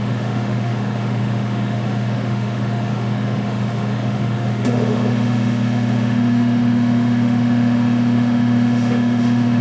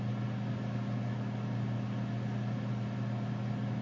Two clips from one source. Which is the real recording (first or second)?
second